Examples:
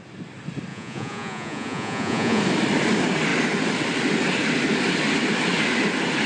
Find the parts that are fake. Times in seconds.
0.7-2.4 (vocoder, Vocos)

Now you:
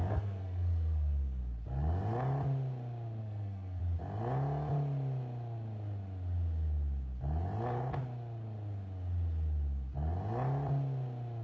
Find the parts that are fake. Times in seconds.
0.0-1.4 (codec, SNAC); 3.2-3.8

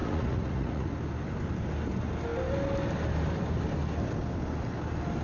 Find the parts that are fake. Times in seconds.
0.0-0.9 (vocoder, Vocos)

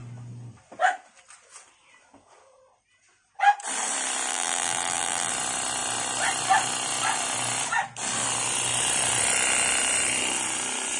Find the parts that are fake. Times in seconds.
4.3-5.3 (vocoder, BigVGAN v2)

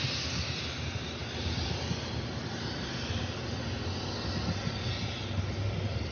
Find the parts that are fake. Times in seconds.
none

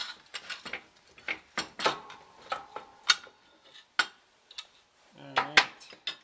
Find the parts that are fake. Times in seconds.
none

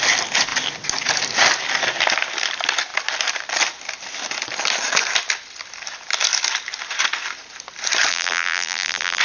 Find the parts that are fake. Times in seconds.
8.1-9.2 (vocoder, BigVGAN v2)